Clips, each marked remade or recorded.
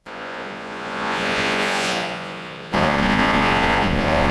remade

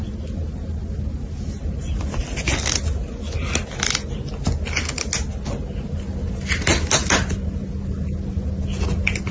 recorded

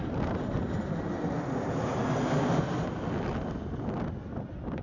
recorded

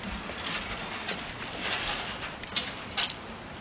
recorded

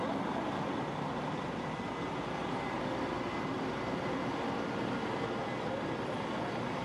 recorded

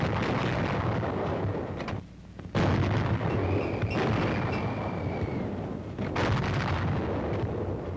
recorded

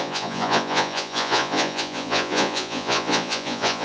remade